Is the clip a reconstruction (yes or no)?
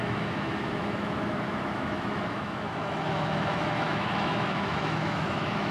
yes